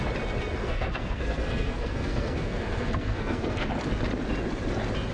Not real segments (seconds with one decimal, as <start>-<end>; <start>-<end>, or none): 0.6-3.7